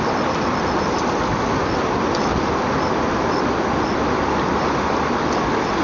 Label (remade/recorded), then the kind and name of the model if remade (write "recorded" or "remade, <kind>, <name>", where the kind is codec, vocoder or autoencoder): recorded